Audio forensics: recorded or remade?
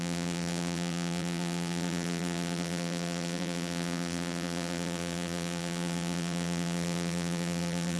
remade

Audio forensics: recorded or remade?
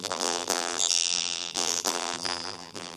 remade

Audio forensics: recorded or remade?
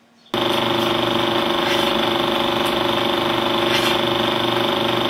recorded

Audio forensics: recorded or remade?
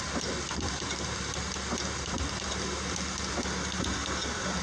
recorded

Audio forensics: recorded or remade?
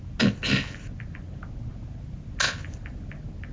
recorded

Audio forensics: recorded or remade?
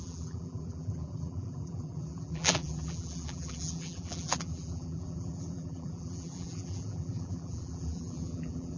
remade